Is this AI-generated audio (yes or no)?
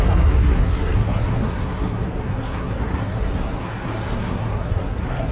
yes